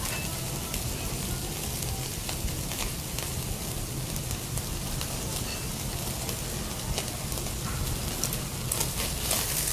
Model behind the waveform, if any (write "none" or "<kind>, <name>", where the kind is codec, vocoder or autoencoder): none